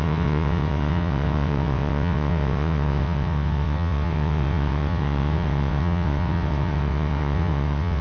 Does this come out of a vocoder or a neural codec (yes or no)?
yes